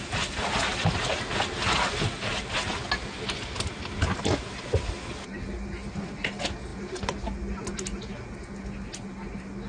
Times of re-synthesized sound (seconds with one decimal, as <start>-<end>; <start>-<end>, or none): none